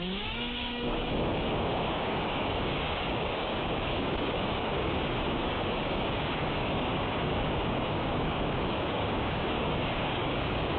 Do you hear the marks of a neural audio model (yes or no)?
yes